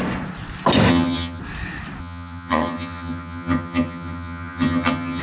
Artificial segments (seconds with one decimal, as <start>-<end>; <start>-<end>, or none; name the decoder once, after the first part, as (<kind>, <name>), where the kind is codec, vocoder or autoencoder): 0.9-1.4 (vocoder, HiFi-GAN); 2.0-5.2

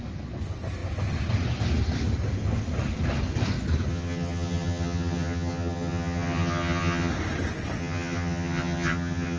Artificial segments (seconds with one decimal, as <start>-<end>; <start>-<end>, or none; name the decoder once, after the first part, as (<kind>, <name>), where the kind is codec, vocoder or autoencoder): 3.9-7.1 (vocoder, HiFi-GAN); 7.8-9.4

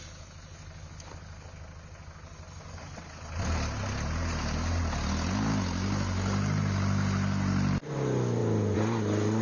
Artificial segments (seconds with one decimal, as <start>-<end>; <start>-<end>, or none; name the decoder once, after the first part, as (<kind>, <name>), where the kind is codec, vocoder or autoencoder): none

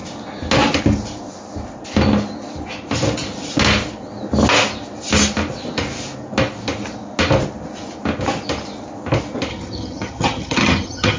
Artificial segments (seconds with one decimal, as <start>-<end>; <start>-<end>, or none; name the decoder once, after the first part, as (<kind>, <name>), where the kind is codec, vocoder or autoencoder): 9.5-11.2 (vocoder, HiFi-GAN)

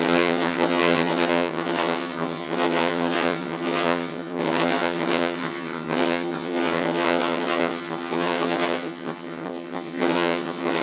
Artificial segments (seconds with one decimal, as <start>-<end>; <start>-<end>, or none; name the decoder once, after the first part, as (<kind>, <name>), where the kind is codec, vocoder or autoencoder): 0.0-10.8 (vocoder, HiFi-GAN)

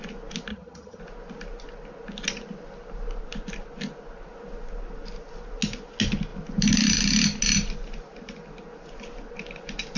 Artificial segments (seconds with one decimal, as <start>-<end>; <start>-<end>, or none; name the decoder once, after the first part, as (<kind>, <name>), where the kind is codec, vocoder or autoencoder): 0.5-1.0 (vocoder, HiFi-GAN)

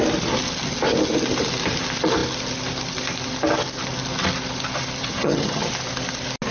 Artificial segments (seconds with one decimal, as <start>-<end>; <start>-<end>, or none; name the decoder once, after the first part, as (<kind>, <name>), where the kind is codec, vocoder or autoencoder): 5.0-5.7 (vocoder, HiFi-GAN)